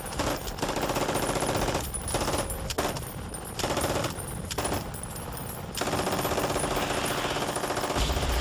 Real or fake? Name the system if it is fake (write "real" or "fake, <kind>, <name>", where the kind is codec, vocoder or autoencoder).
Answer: real